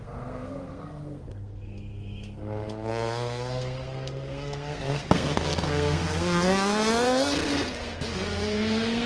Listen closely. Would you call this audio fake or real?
fake